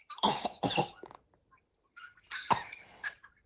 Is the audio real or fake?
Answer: real